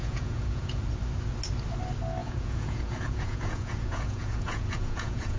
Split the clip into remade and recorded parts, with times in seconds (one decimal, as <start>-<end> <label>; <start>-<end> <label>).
0.0-0.8 remade; 0.8-2.2 recorded; 2.2-5.4 remade